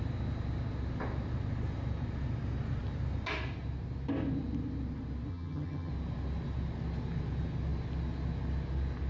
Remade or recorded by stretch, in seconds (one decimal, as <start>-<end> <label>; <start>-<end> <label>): 0.0-5.3 recorded; 5.3-5.9 remade; 5.9-9.1 recorded